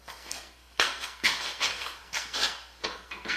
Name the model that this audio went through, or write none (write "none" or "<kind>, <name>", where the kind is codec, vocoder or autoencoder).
codec, SNAC